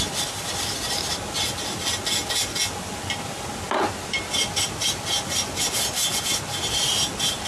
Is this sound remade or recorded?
recorded